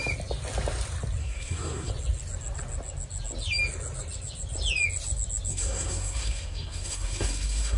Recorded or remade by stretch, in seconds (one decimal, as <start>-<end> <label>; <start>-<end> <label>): 0.0-1.2 recorded; 1.2-1.9 remade; 1.9-5.5 recorded; 5.5-7.8 remade